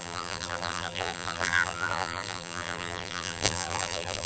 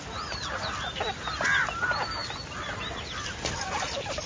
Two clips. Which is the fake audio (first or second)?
first